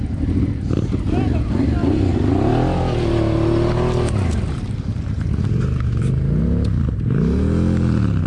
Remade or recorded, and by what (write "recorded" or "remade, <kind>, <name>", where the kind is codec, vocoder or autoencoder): recorded